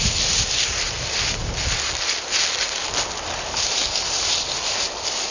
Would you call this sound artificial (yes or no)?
no